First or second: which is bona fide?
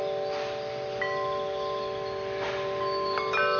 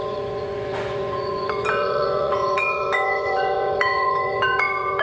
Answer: first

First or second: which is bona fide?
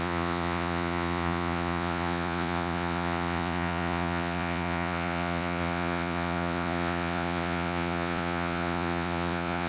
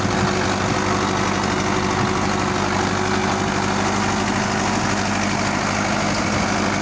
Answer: second